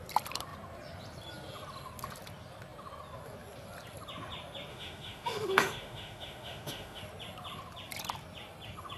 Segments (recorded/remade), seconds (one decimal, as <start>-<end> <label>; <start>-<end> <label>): 0.0-4.7 recorded; 4.7-7.0 remade; 7.0-9.0 recorded

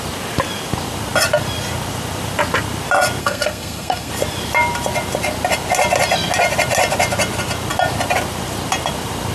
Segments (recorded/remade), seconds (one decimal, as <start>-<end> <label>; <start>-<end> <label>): 0.0-3.2 recorded; 3.2-4.1 remade; 4.1-9.3 recorded

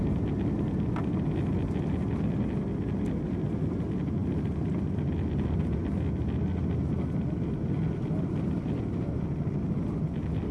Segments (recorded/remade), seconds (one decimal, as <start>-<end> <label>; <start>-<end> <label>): 0.0-10.5 recorded

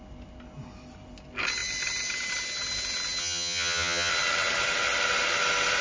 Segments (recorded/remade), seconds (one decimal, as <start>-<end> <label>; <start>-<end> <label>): 0.0-3.2 recorded; 3.2-4.1 remade; 4.1-5.8 recorded

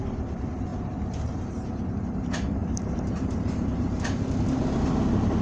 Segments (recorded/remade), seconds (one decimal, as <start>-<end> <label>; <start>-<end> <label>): 0.0-5.4 remade

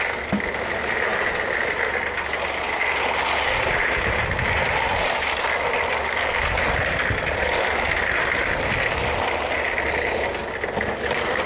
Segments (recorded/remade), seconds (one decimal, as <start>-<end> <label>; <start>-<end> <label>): 0.0-11.5 recorded

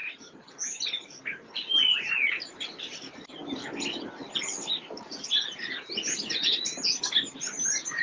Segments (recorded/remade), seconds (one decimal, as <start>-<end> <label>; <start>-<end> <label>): 0.0-8.0 recorded

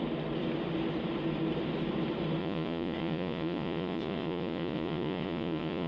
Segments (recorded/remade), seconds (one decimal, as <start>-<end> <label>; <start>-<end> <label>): 0.0-2.4 recorded; 2.4-5.9 remade